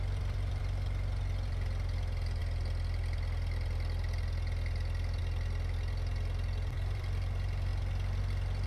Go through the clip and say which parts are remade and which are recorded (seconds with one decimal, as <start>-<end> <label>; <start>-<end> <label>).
0.0-2.4 remade; 2.4-5.2 recorded; 5.2-7.7 remade; 7.7-8.2 recorded; 8.2-8.7 remade